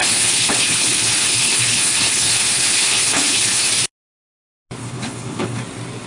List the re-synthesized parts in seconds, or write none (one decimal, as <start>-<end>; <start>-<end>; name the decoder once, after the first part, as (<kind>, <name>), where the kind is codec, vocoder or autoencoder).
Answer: 0.0-3.7 (codec, HILCodec); 4.8-5.6